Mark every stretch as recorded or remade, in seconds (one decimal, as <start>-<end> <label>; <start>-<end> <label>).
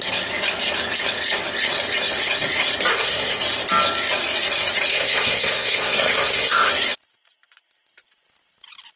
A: 0.0-2.9 recorded; 2.9-3.4 remade; 3.4-4.9 recorded; 4.9-6.7 remade; 6.7-9.0 recorded